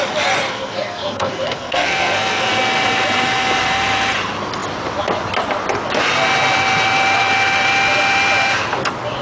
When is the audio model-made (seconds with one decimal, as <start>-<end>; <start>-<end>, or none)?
0.5-2.5